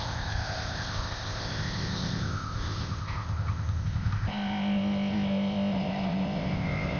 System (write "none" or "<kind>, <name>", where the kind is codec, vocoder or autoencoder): codec, ZipCodec